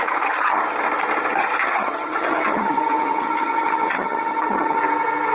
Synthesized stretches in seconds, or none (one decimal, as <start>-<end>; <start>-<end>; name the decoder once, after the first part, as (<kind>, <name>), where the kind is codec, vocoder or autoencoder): 0.0-0.6 (vocoder, HiFi-GAN); 1.6-4.8